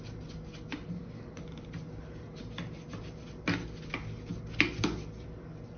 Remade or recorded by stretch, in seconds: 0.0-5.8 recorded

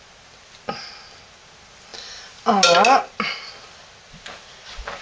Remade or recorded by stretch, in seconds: 0.0-5.0 recorded

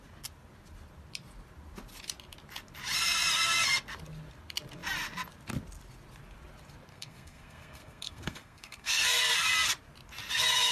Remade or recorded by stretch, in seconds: 0.0-6.9 recorded; 6.9-9.2 remade; 9.2-10.7 recorded